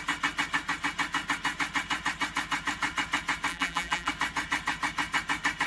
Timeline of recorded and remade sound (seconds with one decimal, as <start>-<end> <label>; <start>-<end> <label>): 0.0-3.5 recorded; 3.5-4.1 remade; 4.1-5.7 recorded